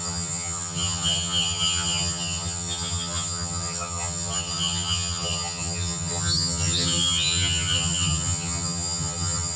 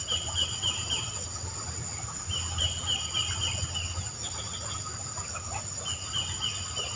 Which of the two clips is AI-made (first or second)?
first